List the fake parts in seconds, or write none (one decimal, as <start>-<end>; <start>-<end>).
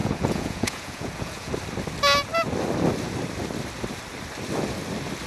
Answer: 0.0-1.5